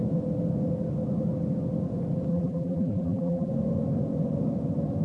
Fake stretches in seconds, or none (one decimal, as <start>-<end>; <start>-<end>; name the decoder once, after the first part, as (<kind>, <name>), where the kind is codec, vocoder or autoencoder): 2.3-3.5 (vocoder, BigVGAN v2)